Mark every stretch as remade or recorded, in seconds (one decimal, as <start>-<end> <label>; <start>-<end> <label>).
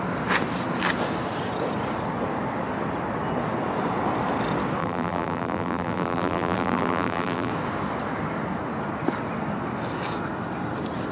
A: 0.0-4.8 recorded; 4.8-7.5 remade; 7.5-11.1 recorded